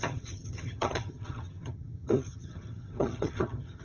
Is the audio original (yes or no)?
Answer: no